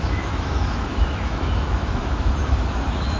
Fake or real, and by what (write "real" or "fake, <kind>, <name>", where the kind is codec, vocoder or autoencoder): fake, autoencoder, DAC-VAE